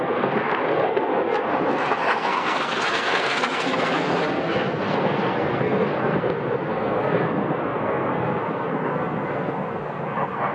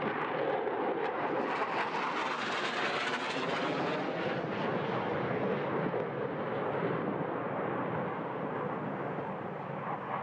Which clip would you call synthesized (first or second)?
first